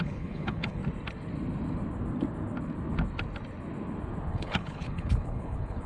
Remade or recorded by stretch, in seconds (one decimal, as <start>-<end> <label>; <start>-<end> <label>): 0.0-0.8 remade; 0.8-4.3 recorded; 4.3-5.9 remade